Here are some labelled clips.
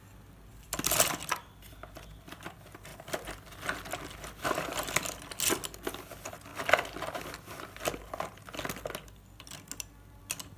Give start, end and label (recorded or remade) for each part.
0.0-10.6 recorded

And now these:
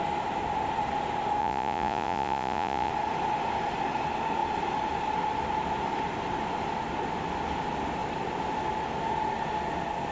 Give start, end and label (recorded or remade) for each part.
0.0-1.4 recorded; 1.4-2.9 remade; 2.9-10.1 recorded

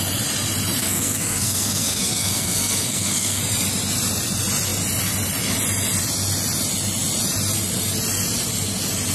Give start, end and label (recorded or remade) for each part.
0.0-0.8 recorded; 0.8-3.4 remade; 3.4-9.1 recorded